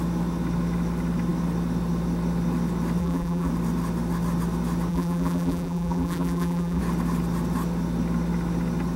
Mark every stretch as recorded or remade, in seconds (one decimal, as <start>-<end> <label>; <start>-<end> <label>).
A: 0.0-3.0 recorded; 3.0-3.5 remade; 3.5-4.9 recorded; 4.9-6.8 remade; 6.8-9.0 recorded